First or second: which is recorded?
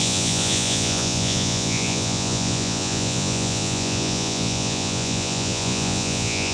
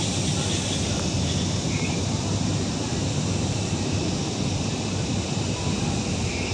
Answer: second